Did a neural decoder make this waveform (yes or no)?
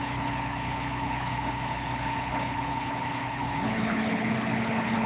yes